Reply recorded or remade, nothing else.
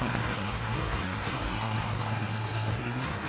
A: remade